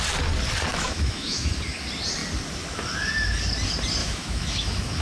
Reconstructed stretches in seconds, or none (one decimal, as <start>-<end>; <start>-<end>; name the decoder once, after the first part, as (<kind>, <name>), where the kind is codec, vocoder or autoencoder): 0.7-1.5 (autoencoder, DAC-VAE); 4.0-5.0